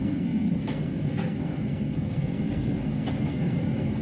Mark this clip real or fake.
fake